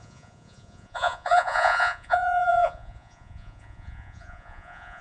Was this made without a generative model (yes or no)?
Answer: no